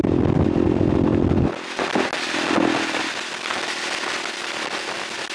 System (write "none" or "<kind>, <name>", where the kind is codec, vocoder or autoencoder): none